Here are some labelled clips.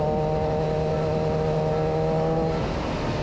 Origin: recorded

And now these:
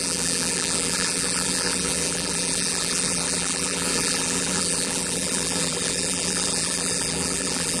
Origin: remade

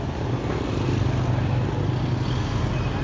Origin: recorded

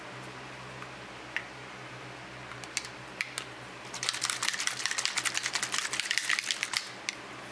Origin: recorded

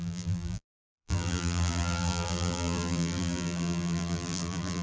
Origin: remade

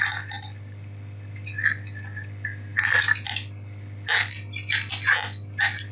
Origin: recorded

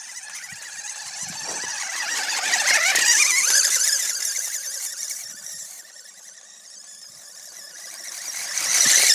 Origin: remade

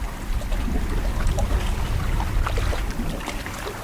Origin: remade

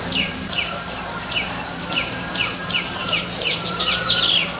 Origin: remade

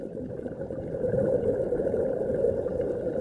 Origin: recorded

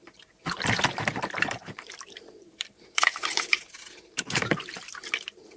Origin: remade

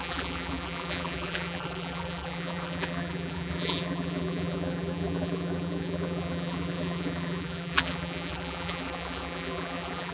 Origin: remade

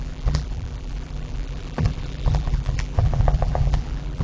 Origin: remade